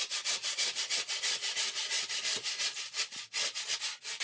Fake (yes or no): no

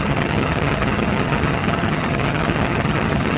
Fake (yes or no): yes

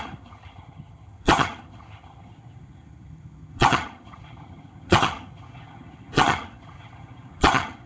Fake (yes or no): yes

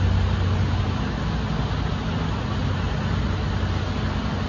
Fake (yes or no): no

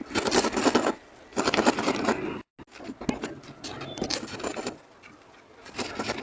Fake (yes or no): no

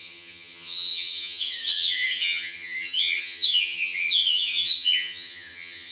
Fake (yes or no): yes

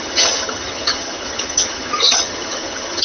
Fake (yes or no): yes